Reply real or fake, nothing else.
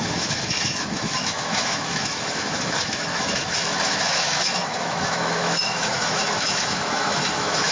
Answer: fake